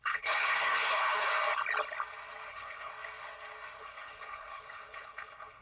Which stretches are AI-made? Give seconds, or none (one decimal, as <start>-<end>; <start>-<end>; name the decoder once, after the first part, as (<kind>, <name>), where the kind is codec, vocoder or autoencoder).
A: 0.0-1.3 (codec, HILCodec); 2.5-2.9; 3.8-5.6